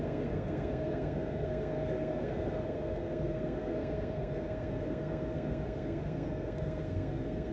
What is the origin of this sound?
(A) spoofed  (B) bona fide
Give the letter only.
A